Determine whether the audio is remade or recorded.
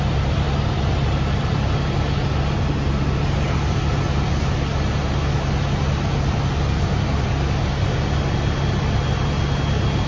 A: recorded